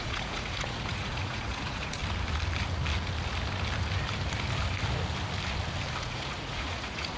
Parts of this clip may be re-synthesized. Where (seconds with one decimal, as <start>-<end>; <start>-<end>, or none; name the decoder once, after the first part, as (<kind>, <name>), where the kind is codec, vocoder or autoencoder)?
0.0-2.0 (vocoder, Vocos); 6.0-7.2